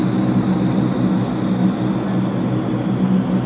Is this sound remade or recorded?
recorded